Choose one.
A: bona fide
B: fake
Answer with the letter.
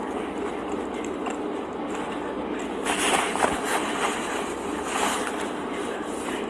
A